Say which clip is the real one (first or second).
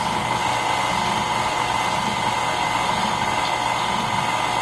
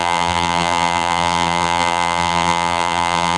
first